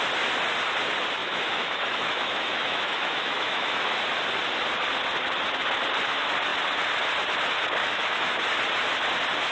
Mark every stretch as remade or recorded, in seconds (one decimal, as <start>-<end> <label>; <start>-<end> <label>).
0.0-1.2 recorded; 1.2-4.0 remade; 4.0-7.8 recorded; 7.8-8.4 remade; 8.4-9.5 recorded